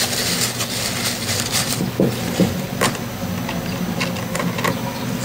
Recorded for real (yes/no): yes